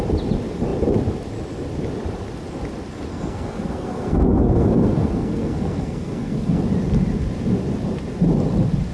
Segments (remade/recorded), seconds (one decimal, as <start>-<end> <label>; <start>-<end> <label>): 0.0-3.1 recorded; 3.1-6.6 remade; 6.6-8.9 recorded